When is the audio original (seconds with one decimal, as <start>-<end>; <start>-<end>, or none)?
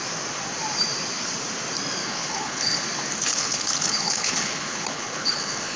0.0-2.0; 2.8-3.3